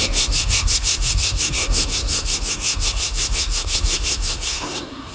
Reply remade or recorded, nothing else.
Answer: remade